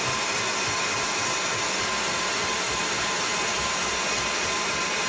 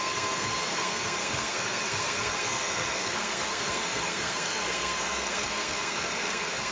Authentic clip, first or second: first